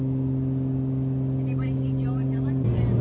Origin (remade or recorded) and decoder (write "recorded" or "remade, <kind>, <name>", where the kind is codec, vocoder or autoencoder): recorded